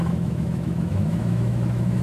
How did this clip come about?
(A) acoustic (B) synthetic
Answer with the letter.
B